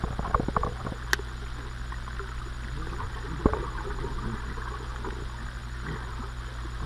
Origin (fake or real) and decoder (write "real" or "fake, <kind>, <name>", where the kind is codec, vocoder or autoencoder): real